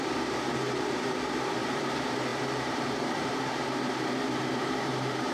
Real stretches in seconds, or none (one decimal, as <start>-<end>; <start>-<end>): none

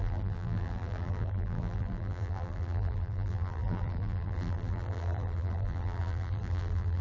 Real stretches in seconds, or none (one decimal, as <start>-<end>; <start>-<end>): none